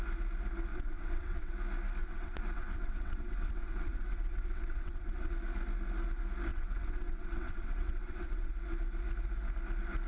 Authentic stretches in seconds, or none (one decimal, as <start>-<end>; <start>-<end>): 0.0-0.7; 1.5-2.0; 5.3-6.5; 8.5-10.1